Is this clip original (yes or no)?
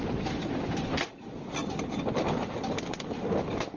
yes